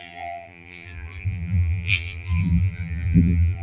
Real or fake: fake